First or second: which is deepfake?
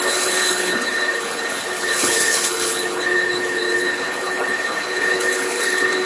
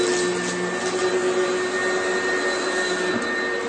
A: first